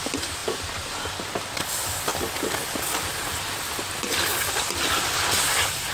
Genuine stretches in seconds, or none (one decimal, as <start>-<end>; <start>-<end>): 0.0-5.9